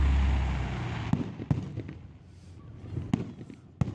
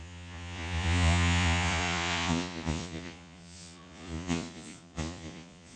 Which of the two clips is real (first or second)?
first